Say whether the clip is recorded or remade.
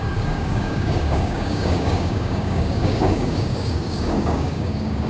remade